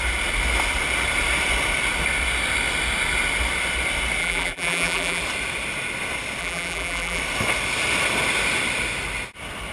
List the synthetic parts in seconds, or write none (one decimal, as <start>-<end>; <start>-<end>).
4.2-5.2; 6.4-7.2